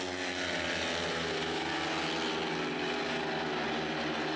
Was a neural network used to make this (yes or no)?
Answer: no